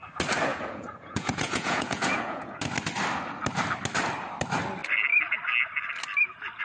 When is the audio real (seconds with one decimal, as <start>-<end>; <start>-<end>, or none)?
0.0-0.5; 2.6-6.6